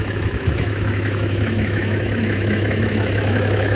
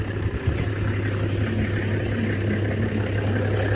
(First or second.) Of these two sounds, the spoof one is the first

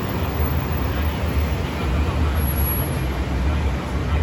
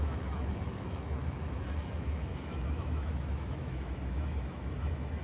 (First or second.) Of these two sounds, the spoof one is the second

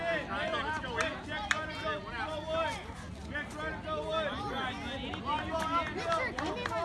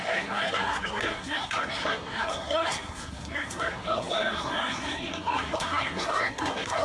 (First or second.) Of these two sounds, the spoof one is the second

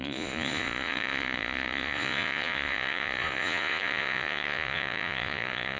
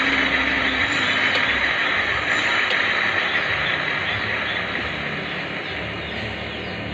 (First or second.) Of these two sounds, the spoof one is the first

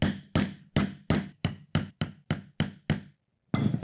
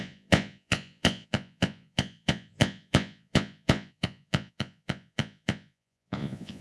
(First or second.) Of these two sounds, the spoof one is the second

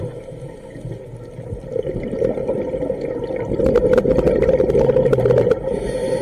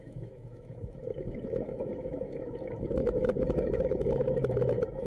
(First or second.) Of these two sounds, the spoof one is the second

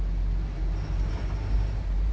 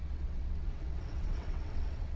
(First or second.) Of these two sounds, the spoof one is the second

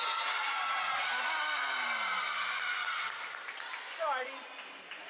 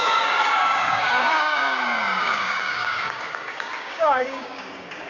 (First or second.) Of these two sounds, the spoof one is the second